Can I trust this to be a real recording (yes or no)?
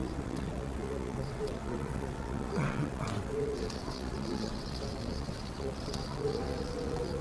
no